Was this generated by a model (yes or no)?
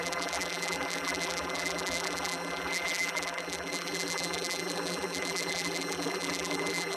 yes